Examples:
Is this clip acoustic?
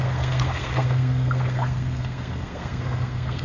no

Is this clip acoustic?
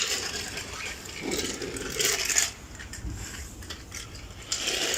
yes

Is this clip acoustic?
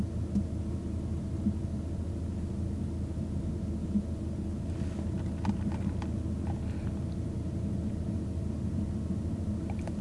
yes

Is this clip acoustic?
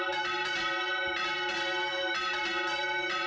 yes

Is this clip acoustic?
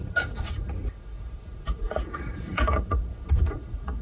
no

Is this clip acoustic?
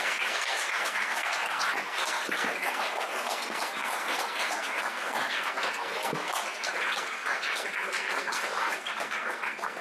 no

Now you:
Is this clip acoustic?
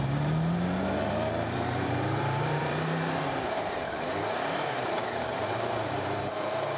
no